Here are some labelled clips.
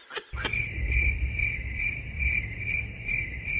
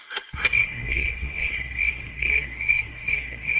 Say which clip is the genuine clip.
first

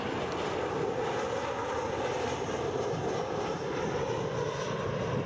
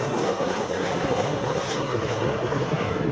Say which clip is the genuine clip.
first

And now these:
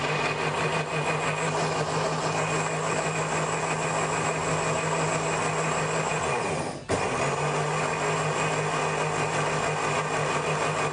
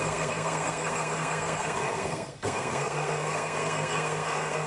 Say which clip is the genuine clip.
first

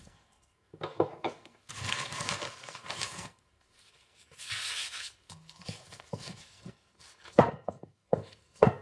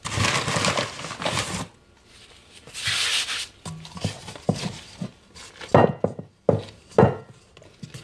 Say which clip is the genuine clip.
second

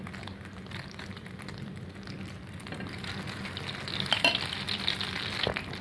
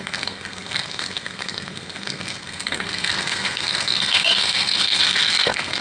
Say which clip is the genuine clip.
first